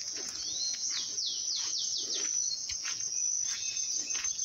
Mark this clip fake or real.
fake